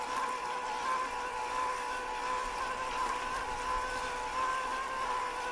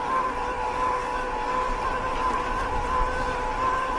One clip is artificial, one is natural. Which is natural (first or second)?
first